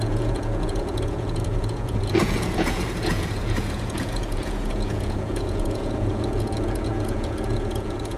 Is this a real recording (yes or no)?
no